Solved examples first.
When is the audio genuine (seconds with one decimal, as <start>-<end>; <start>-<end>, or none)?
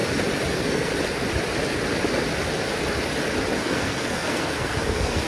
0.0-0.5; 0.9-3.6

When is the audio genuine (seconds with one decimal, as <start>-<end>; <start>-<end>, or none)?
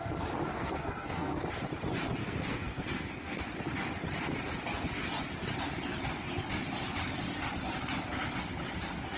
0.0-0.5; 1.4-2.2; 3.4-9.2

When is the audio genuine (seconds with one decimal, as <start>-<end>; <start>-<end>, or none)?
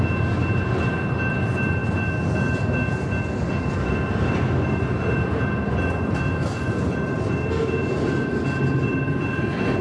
0.0-9.8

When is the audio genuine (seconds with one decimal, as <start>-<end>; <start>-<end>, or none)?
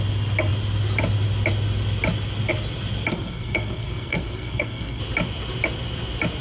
0.0-3.1; 5.0-6.4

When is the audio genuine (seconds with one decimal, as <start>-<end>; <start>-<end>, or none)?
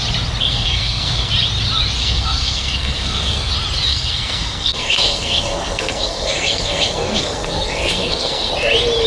0.0-0.4; 1.3-2.0; 3.5-3.9; 8.5-9.1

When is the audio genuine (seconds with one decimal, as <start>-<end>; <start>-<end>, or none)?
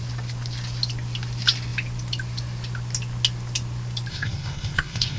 0.0-4.1